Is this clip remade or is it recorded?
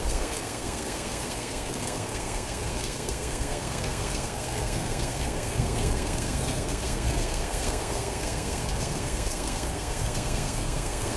remade